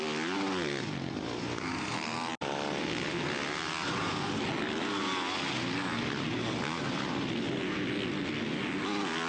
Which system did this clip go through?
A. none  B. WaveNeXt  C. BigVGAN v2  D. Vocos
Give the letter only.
A